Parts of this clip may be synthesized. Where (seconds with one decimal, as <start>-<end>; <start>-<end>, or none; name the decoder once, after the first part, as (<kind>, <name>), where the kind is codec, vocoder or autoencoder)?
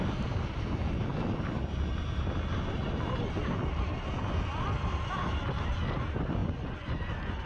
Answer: 6.4-7.5 (vocoder, Vocos)